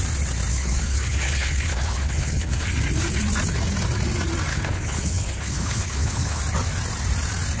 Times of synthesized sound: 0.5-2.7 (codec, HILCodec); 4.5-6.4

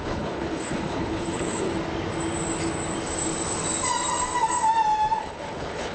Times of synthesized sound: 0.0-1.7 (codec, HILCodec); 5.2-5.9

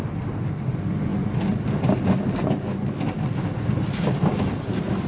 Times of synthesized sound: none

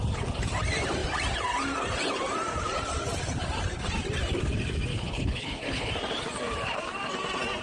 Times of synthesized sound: 4.9-5.9 (codec, HILCodec)

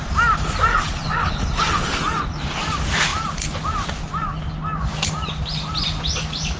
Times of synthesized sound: 0.7-2.0 (codec, HILCodec)

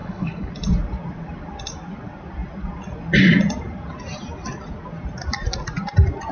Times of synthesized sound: 0.0-0.5 (codec, HILCodec)

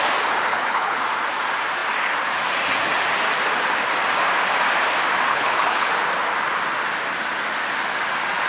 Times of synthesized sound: 0.5-1.0 (codec, HILCodec); 5.3-5.9